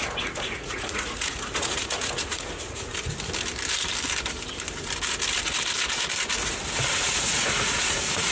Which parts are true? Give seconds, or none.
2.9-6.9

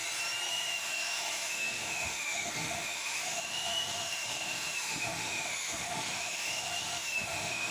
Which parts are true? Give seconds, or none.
0.0-0.5

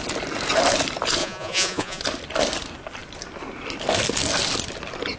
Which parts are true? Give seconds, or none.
0.0-1.2; 2.0-5.2

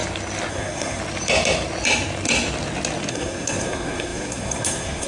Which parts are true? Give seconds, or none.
0.0-0.5; 1.0-3.1

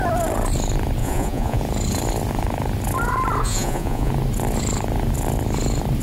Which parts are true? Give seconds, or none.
0.0-1.0; 1.6-3.4; 4.1-6.0

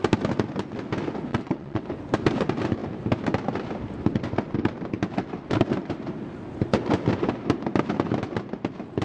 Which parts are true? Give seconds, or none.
0.0-1.3; 1.8-9.0

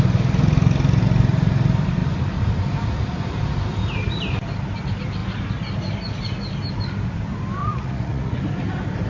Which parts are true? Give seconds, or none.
0.0-7.6; 8.4-9.1

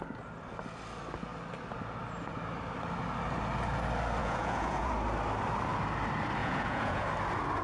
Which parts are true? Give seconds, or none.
0.0-4.2; 4.9-6.4; 7.1-7.6